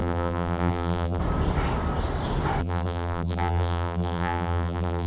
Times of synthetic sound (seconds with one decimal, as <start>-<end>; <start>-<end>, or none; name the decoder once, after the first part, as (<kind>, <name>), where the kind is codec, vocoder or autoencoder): 0.0-1.2 (vocoder, BigVGAN v2); 2.6-5.1